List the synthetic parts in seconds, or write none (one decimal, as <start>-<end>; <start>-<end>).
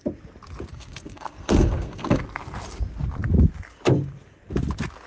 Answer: 0.7-2.2